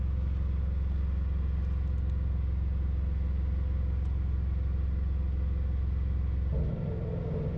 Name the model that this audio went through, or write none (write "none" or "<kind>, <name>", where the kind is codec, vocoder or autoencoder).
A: none